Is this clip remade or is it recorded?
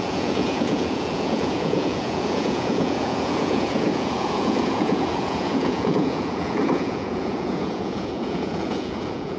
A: remade